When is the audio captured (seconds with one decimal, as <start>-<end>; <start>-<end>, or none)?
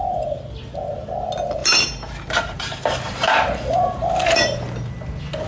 0.0-1.6; 4.9-5.5